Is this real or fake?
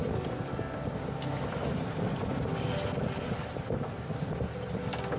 real